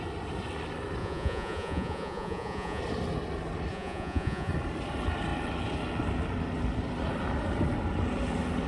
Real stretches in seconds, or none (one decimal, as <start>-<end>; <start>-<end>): 0.0-1.0; 2.8-3.7; 4.5-8.7